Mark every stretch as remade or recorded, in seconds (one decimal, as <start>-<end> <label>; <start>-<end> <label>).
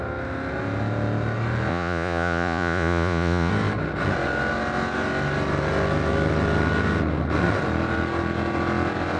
0.0-1.7 recorded; 1.7-3.5 remade; 3.5-9.2 recorded